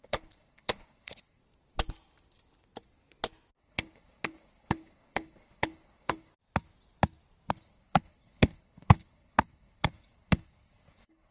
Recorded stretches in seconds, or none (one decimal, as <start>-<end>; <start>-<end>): 1.4-3.6; 6.3-7.5

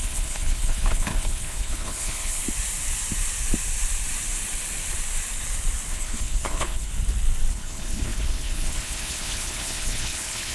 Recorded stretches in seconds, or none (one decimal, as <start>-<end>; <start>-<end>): 2.4-5.9; 6.9-7.5

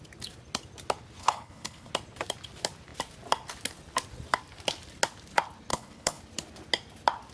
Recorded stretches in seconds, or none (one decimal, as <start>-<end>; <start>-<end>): 0.0-1.2; 1.9-5.7; 6.2-7.3